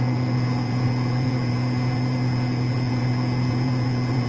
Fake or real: fake